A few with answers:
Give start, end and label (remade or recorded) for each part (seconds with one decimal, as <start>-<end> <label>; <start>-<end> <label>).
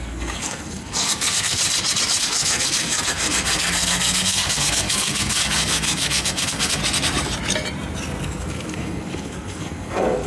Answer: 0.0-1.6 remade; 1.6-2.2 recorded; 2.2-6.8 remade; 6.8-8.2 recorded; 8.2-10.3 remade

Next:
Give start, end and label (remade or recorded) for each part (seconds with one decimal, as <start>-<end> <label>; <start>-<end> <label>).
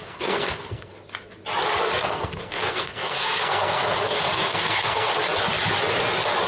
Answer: 0.0-0.9 remade; 0.9-2.0 recorded; 2.0-5.1 remade; 5.1-6.5 recorded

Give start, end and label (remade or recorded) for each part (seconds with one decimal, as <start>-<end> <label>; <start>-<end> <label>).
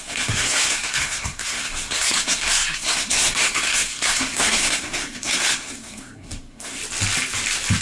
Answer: 0.0-6.8 remade; 6.8-7.8 recorded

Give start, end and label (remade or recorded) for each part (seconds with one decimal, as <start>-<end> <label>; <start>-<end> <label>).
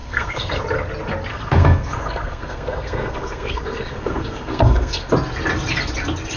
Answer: 0.0-0.6 remade; 0.6-1.3 recorded; 1.3-5.1 remade; 5.1-6.4 recorded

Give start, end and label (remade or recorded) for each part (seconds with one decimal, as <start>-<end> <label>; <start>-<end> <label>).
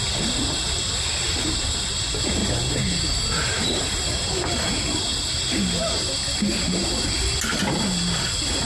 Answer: 0.0-8.7 recorded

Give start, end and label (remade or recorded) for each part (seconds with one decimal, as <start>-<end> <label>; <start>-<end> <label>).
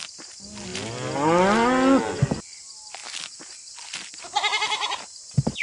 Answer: 0.0-5.6 recorded